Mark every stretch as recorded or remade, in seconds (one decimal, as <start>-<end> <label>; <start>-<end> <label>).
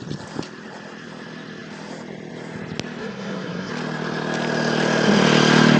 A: 0.0-3.0 recorded; 3.0-3.7 remade; 3.7-5.8 recorded